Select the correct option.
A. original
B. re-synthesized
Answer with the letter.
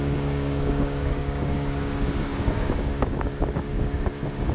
B